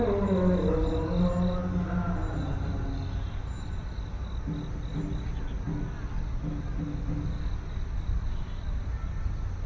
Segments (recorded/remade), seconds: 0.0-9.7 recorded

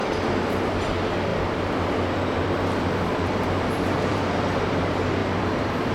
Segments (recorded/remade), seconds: 0.0-0.8 remade; 0.8-1.3 recorded; 1.3-4.8 remade; 4.8-5.2 recorded; 5.2-5.9 remade